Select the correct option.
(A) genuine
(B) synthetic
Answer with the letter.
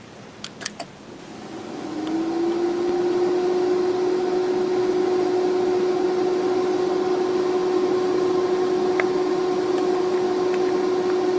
A